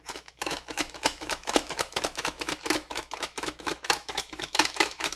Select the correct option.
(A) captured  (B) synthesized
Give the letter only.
B